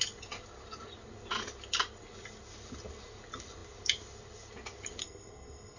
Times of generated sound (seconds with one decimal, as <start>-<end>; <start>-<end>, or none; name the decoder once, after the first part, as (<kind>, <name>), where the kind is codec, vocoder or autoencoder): 5.0-5.8 (codec, SNAC)